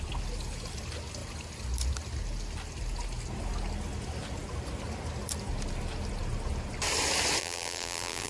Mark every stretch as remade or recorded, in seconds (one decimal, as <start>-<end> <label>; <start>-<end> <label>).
0.0-7.4 recorded; 7.4-8.3 remade